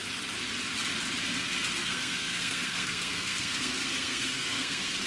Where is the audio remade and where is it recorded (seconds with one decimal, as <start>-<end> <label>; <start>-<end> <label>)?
0.0-1.8 recorded; 1.8-5.1 remade